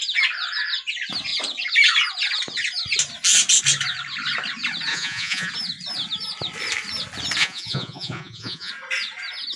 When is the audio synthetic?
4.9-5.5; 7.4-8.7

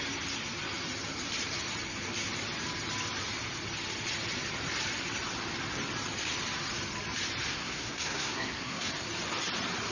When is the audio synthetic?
7.5-8.9

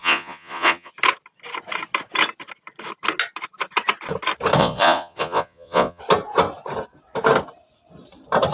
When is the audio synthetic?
0.0-0.9; 4.6-6.0

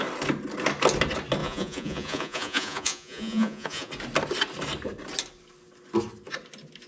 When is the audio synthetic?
1.4-3.9

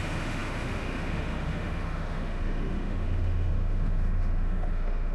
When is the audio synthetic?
0.0-5.1

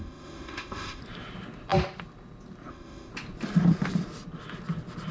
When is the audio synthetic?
0.0-1.0; 2.7-3.1

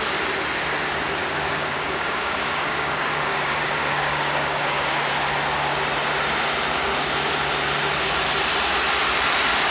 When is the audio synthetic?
1.2-5.1

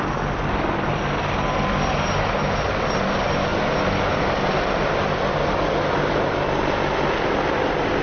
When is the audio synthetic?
none